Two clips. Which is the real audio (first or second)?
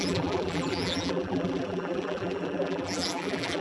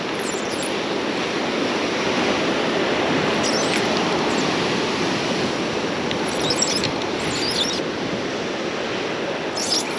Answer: second